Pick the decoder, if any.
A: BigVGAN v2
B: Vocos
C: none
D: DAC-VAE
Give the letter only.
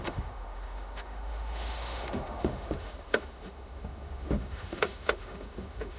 D